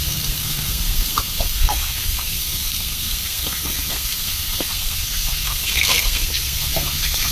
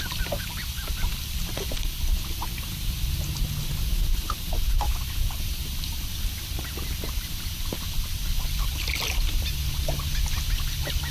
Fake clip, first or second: first